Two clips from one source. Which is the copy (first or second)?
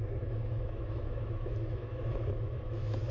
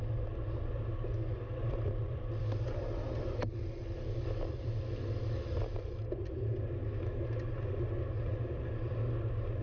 first